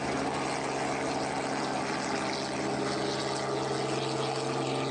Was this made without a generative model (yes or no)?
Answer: yes